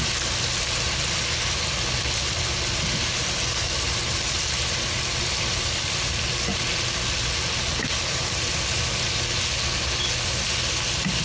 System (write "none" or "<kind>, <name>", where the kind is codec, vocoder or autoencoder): none